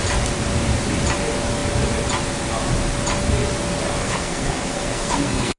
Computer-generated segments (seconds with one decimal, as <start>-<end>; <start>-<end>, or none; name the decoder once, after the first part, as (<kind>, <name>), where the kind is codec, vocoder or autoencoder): 4.0-5.6 (codec, SNAC)